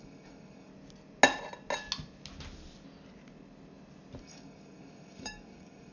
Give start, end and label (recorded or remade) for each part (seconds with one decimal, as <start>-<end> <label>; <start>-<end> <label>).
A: 0.0-0.7 remade; 0.7-4.2 recorded; 4.2-5.9 remade